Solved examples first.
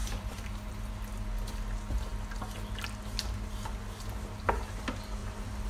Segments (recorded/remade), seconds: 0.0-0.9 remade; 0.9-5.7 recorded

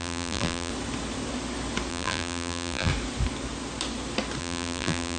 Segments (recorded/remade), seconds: 0.0-0.7 remade; 0.7-1.9 recorded; 1.9-2.9 remade; 2.9-4.4 recorded; 4.4-5.2 remade

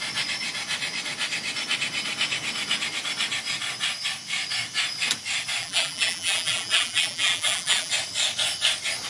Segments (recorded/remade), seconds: 0.0-5.6 recorded; 5.6-7.9 remade; 7.9-9.1 recorded

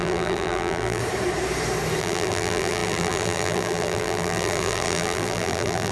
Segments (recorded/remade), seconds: 0.0-1.0 remade; 1.0-2.0 recorded; 2.0-5.9 remade

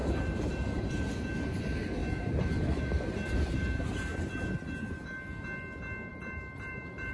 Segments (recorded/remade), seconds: 0.0-1.1 remade; 1.1-2.0 recorded; 2.0-4.0 remade; 4.0-6.1 recorded; 6.1-7.1 remade

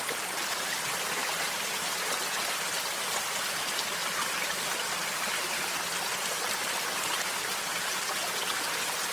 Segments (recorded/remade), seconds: 0.0-1.2 recorded; 1.2-1.9 remade; 1.9-4.0 recorded; 4.0-8.1 remade; 8.1-9.1 recorded

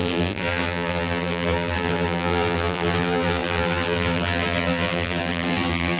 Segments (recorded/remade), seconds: 0.0-6.0 remade

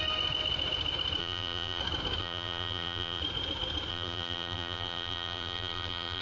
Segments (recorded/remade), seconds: 0.0-1.2 recorded; 1.2-1.8 remade; 1.8-2.2 recorded; 2.2-3.2 remade; 3.2-3.9 recorded; 3.9-6.2 remade